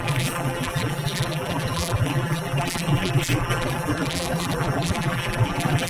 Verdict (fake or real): fake